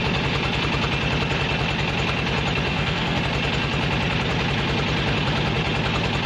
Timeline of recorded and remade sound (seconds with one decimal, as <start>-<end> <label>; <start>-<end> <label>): 0.0-2.7 recorded; 2.7-3.2 remade; 3.2-6.3 recorded